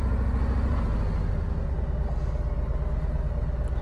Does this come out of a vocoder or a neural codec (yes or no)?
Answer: no